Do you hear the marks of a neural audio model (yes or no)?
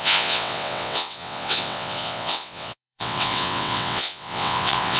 yes